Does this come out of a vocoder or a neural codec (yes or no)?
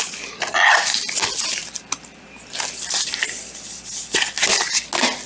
no